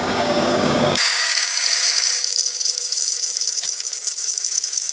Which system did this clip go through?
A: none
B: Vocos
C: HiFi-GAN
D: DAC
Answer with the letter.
D